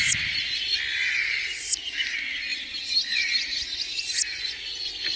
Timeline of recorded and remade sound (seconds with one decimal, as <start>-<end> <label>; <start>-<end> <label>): 0.0-2.5 recorded; 2.5-3.9 remade; 3.9-5.2 recorded

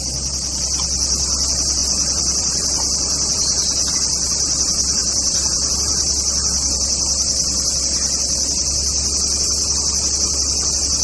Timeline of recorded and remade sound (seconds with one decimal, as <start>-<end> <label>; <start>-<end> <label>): 0.0-1.8 recorded; 1.8-3.9 remade; 3.9-5.0 recorded; 5.0-5.7 remade; 5.7-11.0 recorded